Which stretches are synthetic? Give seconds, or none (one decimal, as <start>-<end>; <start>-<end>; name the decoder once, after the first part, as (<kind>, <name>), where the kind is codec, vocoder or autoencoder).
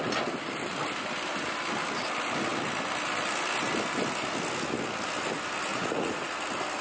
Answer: 5.7-6.3 (vocoder, Vocos)